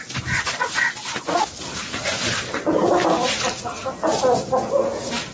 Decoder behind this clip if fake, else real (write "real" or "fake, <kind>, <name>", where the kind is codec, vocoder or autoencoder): real